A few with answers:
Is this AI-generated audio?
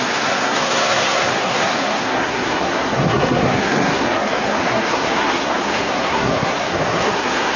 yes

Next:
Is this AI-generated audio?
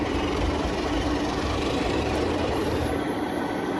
yes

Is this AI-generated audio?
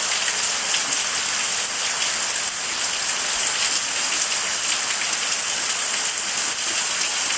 no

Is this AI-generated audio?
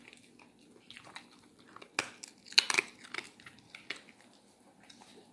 no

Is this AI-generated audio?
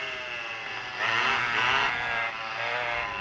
no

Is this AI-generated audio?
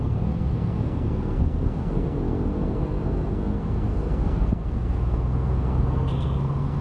yes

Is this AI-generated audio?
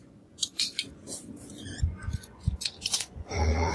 yes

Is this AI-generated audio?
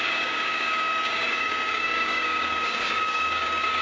yes